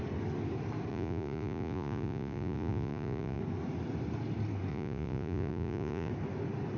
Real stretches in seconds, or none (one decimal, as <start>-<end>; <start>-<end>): 0.0-0.9; 3.4-4.7; 6.1-6.8